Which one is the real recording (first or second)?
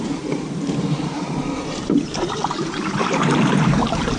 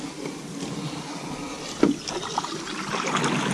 second